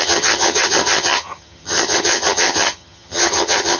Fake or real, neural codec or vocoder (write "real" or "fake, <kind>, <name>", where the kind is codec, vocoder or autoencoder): fake, vocoder, HiFi-GAN